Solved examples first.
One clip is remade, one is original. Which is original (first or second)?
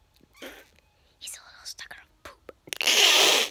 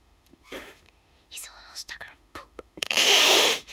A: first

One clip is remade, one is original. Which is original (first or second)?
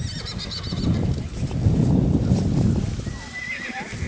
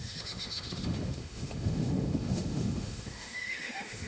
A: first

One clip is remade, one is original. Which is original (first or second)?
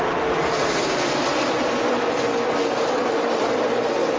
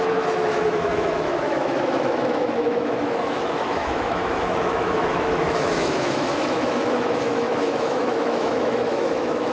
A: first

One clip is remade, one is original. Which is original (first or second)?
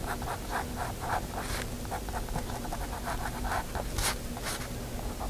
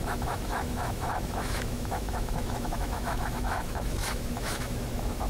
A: first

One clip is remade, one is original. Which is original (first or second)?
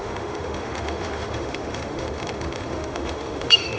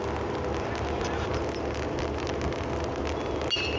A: second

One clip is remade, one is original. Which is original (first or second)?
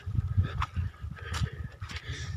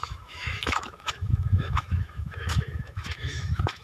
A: first